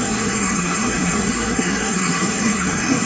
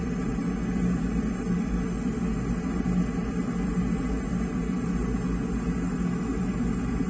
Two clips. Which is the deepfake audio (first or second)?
first